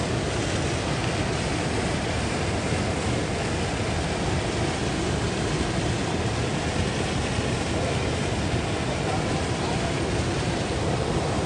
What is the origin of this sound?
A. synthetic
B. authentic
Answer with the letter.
B